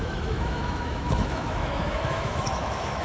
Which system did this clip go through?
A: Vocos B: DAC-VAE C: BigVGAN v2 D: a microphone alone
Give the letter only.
B